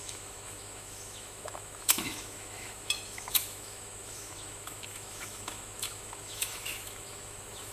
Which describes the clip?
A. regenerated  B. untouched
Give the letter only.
A